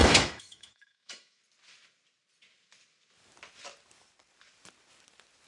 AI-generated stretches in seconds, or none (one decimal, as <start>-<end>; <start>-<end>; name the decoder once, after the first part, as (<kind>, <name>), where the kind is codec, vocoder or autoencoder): 0.0-1.4 (autoencoder, DAC-VAE)

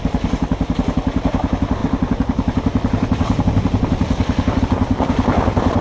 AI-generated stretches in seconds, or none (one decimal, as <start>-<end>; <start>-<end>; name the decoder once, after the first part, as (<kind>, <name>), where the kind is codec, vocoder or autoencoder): none

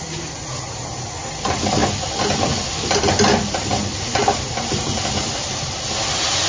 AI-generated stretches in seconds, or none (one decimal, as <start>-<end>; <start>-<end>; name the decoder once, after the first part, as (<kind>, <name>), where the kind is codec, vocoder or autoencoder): none

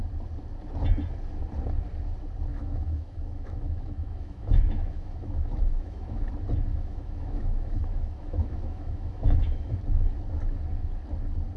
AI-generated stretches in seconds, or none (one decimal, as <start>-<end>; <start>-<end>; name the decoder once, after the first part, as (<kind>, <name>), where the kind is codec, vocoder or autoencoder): 2.5-6.3 (autoencoder, DAC-VAE); 6.7-9.8

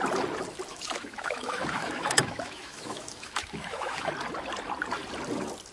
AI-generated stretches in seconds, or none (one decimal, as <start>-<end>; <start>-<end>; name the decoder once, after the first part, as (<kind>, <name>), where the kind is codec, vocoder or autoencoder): 0.7-4.1 (autoencoder, DAC-VAE)

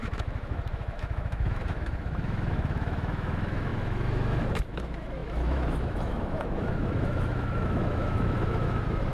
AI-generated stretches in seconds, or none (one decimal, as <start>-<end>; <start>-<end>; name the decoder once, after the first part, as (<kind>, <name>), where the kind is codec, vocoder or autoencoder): 0.0-9.1 (autoencoder, DAC-VAE)

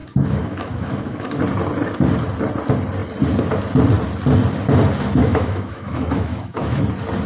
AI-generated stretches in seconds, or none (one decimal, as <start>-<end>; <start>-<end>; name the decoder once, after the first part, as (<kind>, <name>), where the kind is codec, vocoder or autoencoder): 0.0-1.4 (autoencoder, DAC-VAE); 5.2-6.8

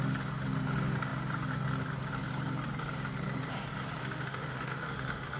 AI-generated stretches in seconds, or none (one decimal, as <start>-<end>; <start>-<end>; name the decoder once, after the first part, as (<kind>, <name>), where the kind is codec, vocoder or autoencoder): 4.0-5.4 (autoencoder, DAC-VAE)